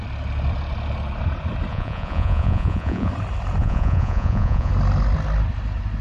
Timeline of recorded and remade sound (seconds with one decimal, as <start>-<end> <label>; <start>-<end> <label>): 0.0-1.7 recorded; 1.7-3.1 remade; 3.1-3.6 recorded; 3.6-4.7 remade; 4.7-6.0 recorded